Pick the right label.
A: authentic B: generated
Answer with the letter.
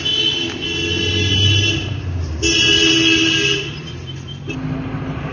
A